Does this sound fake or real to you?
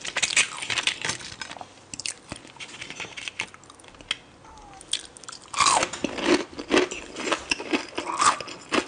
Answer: real